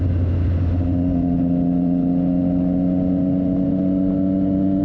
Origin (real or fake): real